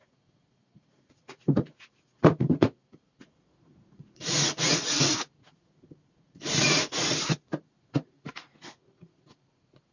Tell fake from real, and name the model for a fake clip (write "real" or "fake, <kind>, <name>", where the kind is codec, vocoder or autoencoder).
fake, vocoder, Vocos